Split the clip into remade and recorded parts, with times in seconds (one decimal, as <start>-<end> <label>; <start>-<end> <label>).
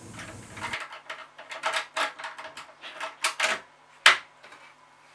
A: 0.0-5.1 recorded